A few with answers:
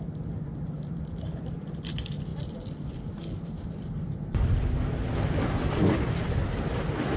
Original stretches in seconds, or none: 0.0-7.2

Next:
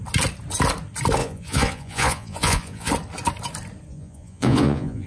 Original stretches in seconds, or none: 0.0-1.2; 2.9-3.9

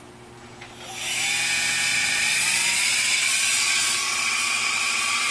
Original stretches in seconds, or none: 0.0-1.9